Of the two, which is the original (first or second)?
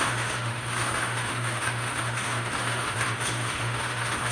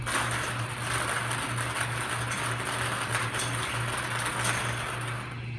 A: second